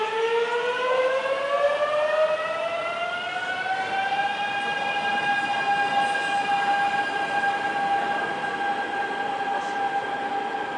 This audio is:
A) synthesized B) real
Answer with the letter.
B